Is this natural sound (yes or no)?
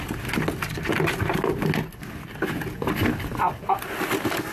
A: yes